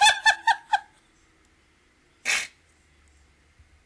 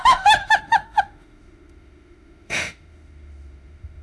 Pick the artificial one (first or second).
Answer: second